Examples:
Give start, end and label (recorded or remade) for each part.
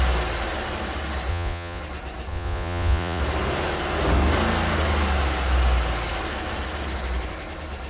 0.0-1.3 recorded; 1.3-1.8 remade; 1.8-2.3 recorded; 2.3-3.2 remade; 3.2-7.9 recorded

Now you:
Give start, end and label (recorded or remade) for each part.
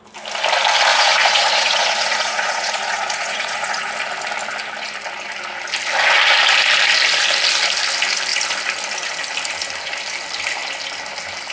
0.0-0.9 recorded; 0.9-3.9 remade; 3.9-11.5 recorded